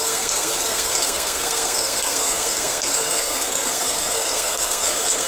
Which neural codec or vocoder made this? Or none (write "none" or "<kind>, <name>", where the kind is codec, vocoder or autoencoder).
codec, SNAC